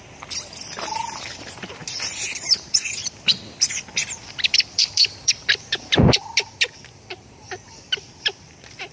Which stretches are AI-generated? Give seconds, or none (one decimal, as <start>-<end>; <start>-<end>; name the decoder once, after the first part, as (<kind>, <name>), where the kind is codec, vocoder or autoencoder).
4.0-8.2 (vocoder, BigVGAN v2)

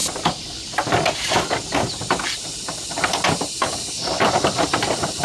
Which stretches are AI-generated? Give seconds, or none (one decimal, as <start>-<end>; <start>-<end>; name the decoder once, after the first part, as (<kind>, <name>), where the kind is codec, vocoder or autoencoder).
none

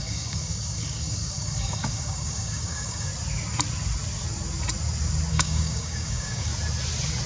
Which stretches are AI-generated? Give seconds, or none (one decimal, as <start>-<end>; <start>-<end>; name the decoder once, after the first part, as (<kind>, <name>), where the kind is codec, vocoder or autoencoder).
0.0-3.1 (codec, DAC); 5.3-6.5

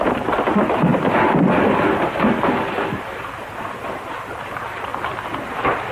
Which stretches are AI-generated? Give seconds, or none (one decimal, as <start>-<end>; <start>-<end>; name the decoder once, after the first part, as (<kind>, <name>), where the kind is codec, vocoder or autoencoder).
0.0-0.9 (vocoder, BigVGAN v2); 4.4-4.9; 5.5-5.9

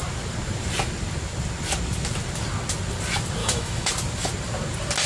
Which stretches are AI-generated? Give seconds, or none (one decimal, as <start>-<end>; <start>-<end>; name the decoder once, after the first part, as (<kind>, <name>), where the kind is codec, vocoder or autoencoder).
3.4-3.9 (autoencoder, DAC-VAE)

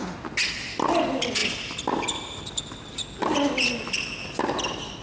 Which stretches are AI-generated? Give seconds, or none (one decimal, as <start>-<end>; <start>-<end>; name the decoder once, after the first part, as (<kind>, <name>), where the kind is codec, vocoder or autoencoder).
none

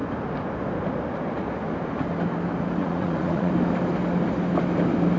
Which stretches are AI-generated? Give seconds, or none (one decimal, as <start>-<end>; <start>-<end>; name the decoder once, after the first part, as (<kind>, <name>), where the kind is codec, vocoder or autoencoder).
2.8-3.5 (vocoder, Vocos)

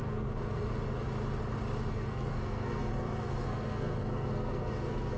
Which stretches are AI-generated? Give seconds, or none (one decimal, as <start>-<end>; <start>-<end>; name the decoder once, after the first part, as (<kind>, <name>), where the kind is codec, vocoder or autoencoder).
0.0-0.7 (codec, SNAC); 1.9-5.2